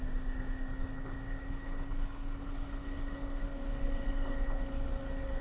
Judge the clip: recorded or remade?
remade